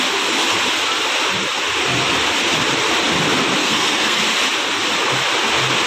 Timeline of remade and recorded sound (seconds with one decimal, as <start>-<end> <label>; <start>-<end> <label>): 0.0-3.6 recorded; 3.6-4.2 remade; 4.2-5.9 recorded